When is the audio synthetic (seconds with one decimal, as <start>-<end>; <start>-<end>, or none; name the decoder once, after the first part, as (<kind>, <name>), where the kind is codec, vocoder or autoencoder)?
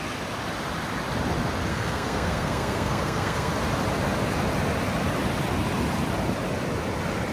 1.7-3.5 (codec, SNAC)